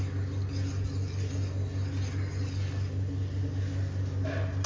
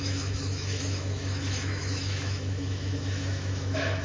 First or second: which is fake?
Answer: second